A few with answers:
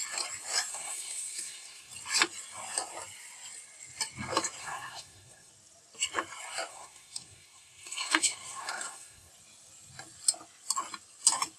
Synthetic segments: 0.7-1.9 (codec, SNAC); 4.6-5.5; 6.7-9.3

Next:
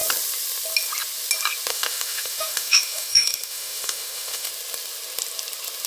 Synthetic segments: 1.7-4.5 (autoencoder, DAC-VAE)

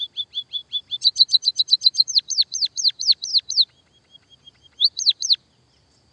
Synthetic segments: 0.0-3.3 (vocoder, BigVGAN v2); 4.4-6.1